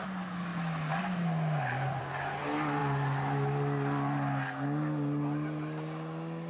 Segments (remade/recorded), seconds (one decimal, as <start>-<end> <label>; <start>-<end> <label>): 0.0-6.5 recorded